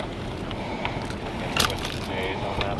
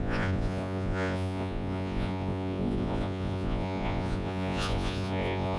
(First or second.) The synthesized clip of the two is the second